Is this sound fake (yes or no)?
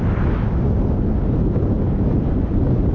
no